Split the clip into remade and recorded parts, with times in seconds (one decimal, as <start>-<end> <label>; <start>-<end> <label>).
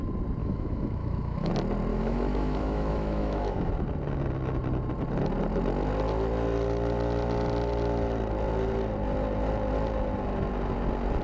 0.0-0.4 recorded; 0.4-1.5 remade; 1.5-1.9 recorded; 1.9-3.7 remade; 3.7-11.2 recorded